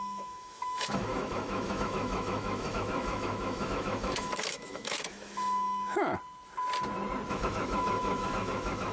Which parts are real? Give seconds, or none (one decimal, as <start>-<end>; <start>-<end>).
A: 6.1-7.3